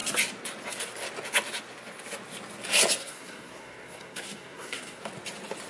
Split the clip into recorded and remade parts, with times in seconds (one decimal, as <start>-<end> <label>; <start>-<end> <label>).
0.0-3.0 recorded; 3.0-5.0 remade; 5.0-5.7 recorded